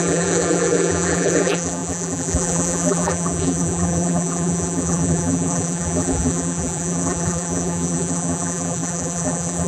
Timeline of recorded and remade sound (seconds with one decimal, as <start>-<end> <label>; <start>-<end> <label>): 0.0-9.7 remade